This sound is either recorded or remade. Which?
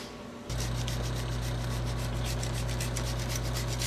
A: recorded